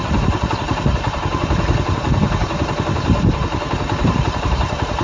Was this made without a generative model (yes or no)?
no